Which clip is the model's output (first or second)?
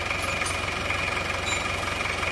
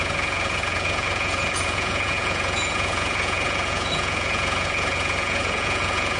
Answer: second